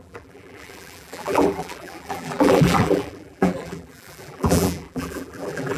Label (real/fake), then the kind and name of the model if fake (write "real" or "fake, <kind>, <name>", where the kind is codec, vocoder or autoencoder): fake, vocoder, BigVGAN v2